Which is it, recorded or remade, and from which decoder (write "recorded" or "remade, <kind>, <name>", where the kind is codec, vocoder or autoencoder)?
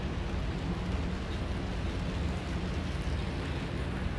recorded